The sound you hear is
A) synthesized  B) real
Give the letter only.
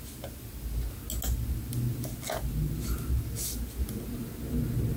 B